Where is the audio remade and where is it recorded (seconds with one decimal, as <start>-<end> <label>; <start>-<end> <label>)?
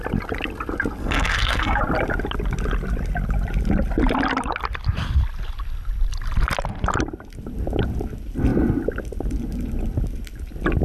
0.0-1.0 recorded; 1.0-1.8 remade; 1.8-10.8 recorded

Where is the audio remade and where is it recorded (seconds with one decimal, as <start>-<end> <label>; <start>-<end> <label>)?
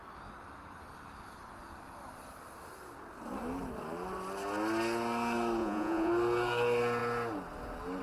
0.0-5.6 recorded; 5.6-6.1 remade; 6.1-8.0 recorded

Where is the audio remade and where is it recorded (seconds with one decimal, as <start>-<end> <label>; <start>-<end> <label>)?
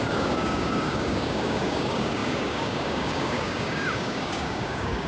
0.0-5.1 remade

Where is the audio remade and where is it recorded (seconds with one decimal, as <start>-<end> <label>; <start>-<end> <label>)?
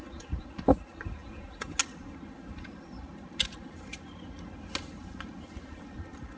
0.0-1.2 recorded; 1.2-1.8 remade; 1.8-6.4 recorded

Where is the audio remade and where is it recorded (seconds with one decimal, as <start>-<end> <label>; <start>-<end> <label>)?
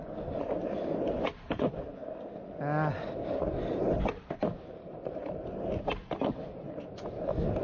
0.0-7.6 recorded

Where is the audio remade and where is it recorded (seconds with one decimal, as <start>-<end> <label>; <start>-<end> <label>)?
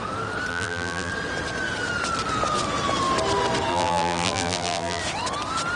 0.0-0.5 recorded; 0.5-1.1 remade; 1.1-3.7 recorded; 3.7-5.0 remade; 5.0-5.8 recorded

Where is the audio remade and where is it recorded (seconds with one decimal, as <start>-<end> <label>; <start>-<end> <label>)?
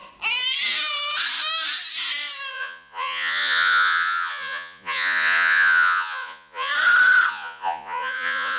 0.0-2.5 recorded; 2.5-6.7 remade; 6.7-7.3 recorded; 7.3-8.6 remade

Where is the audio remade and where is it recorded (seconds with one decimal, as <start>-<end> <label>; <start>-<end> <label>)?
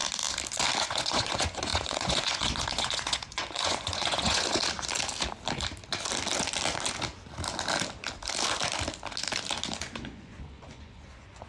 0.0-0.8 recorded; 0.8-4.6 remade; 4.6-9.8 recorded; 9.8-11.5 remade